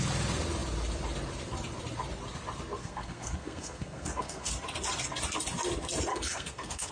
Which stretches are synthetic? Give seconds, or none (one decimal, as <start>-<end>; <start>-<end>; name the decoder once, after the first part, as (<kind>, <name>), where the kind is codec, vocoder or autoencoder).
2.8-4.5 (codec, SNAC); 6.1-6.9

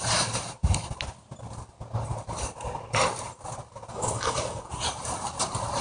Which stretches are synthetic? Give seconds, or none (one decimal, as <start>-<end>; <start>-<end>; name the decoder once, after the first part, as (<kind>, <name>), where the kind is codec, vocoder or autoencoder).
3.9-4.7 (codec, DAC)

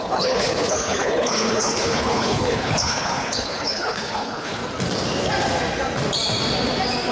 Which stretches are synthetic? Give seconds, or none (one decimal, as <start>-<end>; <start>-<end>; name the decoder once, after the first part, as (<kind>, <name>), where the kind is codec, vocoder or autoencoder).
0.0-4.6 (codec, HILCodec)

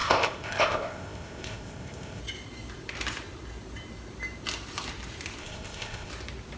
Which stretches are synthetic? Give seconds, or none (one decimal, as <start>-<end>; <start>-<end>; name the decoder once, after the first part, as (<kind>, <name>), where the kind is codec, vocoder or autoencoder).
0.0-2.2 (codec, ZipCodec); 5.4-6.1

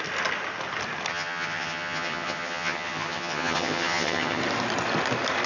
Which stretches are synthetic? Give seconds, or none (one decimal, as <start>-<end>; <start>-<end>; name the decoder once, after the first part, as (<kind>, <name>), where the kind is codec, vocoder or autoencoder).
1.1-4.4 (vocoder, HiFi-GAN)

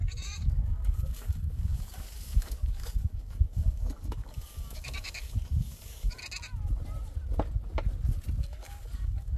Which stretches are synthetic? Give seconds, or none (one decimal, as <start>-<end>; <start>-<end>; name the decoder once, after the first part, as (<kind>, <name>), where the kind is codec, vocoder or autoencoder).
0.0-6.2 (codec, DAC); 8.4-9.4

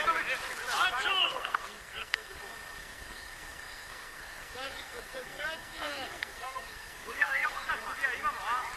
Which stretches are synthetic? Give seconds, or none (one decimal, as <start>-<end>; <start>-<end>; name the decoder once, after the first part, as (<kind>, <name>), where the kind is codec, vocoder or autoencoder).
1.2-2.4 (codec, SNAC); 2.8-7.7

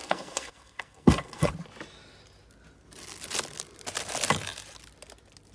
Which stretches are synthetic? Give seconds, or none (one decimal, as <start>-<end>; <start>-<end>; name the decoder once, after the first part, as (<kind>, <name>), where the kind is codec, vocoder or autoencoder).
0.0-1.5 (codec, SNAC)